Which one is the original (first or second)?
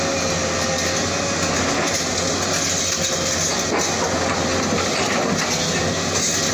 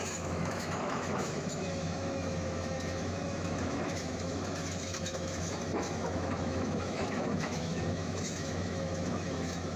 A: first